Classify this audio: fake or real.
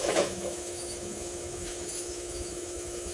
fake